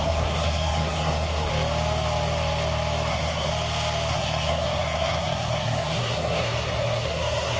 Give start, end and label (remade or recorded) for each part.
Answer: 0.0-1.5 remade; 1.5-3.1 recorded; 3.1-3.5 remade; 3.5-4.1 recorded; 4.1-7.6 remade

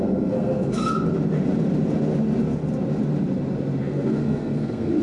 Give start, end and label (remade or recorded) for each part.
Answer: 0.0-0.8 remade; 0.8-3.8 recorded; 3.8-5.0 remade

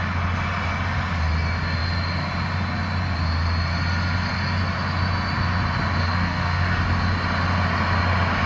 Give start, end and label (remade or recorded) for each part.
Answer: 0.0-6.0 recorded; 6.0-6.8 remade; 6.8-8.5 recorded